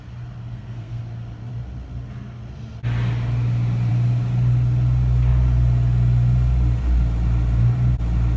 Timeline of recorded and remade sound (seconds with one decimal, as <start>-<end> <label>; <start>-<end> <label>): 0.0-0.4 recorded; 0.4-1.0 remade; 1.0-8.4 recorded